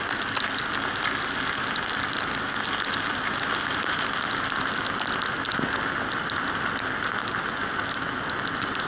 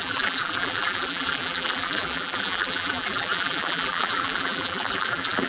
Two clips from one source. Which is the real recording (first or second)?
first